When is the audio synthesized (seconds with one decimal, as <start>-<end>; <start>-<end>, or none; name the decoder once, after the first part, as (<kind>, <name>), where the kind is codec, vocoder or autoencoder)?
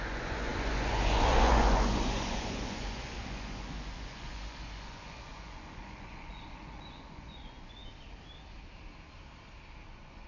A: 0.0-7.8 (vocoder, Vocos); 9.9-10.3